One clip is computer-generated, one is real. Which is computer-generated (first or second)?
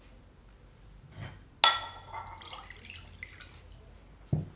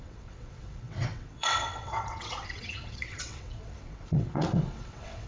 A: second